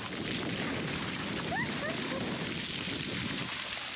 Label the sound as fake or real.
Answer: real